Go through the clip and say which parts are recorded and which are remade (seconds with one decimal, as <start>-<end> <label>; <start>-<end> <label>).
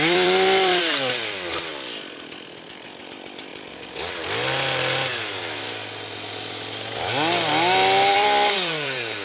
0.0-1.7 remade; 1.7-3.0 recorded; 3.0-3.5 remade; 3.5-8.1 recorded; 8.1-9.2 remade